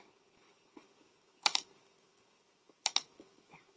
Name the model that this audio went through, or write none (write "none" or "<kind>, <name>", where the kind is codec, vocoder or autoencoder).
autoencoder, DAC-VAE